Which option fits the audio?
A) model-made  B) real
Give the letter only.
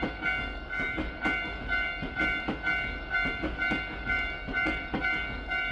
A